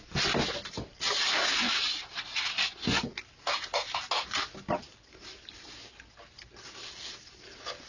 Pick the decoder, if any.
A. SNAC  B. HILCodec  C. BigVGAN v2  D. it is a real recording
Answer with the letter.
D